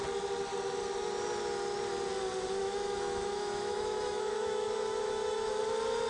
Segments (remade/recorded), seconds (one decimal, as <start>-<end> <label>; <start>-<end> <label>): 0.0-2.6 recorded; 2.6-5.6 remade; 5.6-6.1 recorded